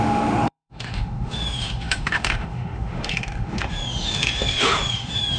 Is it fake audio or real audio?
fake